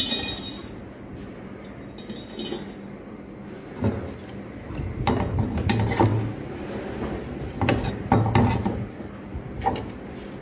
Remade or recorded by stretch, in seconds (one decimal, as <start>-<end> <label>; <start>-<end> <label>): 0.0-0.6 recorded; 0.6-1.6 remade; 1.6-10.4 recorded